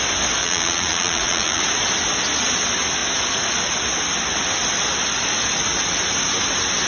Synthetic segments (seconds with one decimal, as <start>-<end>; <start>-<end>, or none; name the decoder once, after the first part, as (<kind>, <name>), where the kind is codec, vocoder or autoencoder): 0.4-1.6 (vocoder, Vocos)